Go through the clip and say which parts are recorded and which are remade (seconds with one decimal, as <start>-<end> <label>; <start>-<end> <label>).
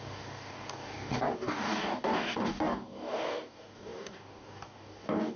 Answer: 0.0-5.4 remade